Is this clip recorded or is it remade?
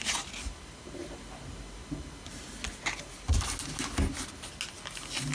recorded